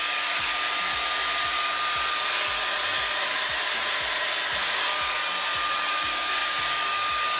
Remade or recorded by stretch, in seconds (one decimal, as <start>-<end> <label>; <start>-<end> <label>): 0.0-0.5 remade; 0.5-4.6 recorded; 4.6-5.2 remade; 5.2-5.9 recorded; 5.9-7.4 remade